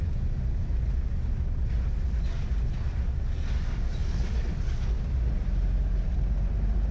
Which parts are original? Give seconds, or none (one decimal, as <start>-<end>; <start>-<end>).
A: 0.0-6.9